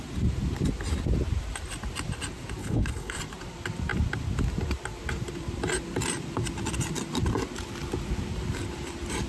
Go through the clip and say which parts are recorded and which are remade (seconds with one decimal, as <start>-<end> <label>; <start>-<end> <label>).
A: 0.0-2.6 recorded; 2.6-3.2 remade; 3.2-9.3 recorded